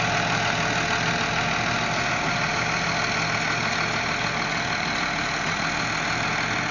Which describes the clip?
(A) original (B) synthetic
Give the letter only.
A